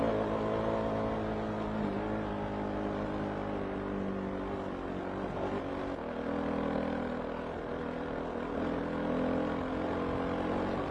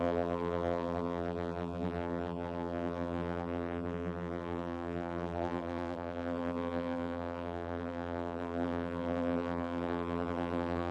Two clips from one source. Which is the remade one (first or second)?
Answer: second